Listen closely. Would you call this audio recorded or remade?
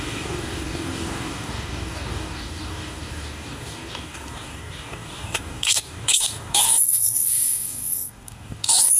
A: remade